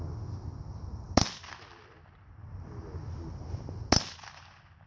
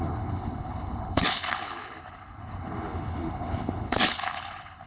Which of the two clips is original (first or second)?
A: first